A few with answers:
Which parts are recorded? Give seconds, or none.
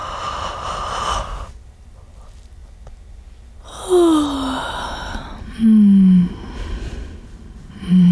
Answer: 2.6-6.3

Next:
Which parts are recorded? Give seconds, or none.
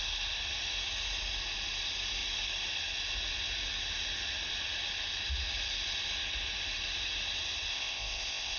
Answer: 0.0-7.7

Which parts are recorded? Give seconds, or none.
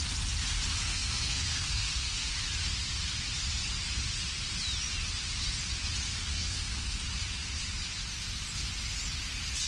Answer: 0.0-0.8; 2.3-6.3; 7.0-9.7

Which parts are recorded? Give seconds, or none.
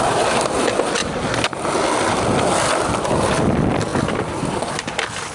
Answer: 0.0-5.3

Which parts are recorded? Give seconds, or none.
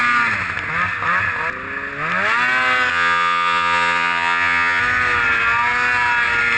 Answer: 0.0-2.9; 4.8-6.6